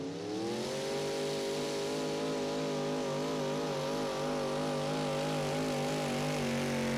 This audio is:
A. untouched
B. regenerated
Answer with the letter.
A